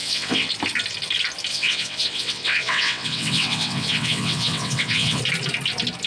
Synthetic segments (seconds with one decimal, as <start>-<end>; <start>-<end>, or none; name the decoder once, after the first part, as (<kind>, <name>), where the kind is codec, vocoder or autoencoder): 0.0-0.5 (vocoder, WaveNeXt); 1.5-5.2